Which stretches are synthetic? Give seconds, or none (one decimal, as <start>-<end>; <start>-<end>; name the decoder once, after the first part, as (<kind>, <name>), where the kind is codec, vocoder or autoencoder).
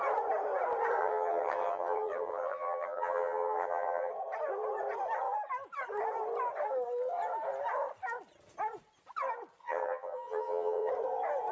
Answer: 1.0-4.1 (vocoder, HiFi-GAN); 9.6-10.9